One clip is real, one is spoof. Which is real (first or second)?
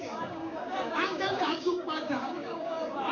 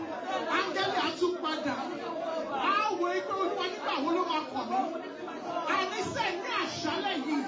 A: second